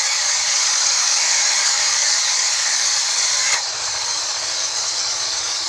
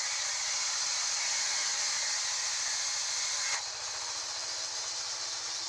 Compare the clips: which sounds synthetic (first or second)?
first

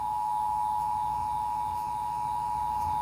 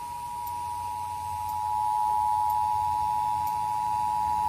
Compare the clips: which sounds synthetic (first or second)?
first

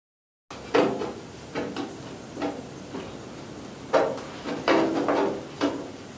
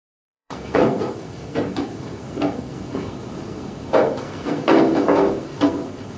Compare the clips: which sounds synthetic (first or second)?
second